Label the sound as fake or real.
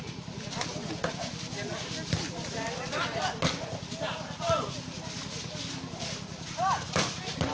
real